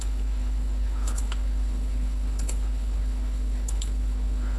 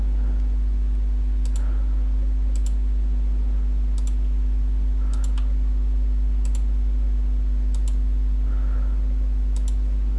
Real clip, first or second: second